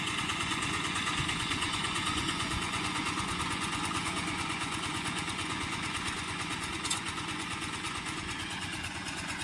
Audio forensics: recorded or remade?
remade